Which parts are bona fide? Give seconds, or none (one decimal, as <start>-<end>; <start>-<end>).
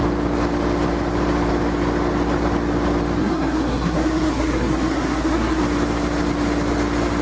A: 0.0-3.2; 5.6-7.2